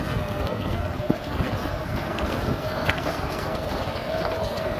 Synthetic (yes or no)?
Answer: yes